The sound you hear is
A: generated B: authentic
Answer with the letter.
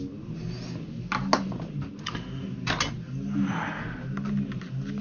B